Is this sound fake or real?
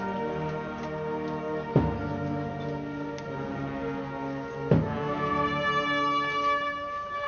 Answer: real